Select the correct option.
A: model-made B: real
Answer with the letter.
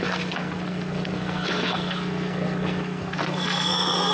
A